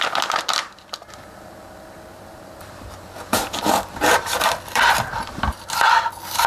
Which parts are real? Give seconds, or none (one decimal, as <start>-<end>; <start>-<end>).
0.0-2.1; 5.6-6.5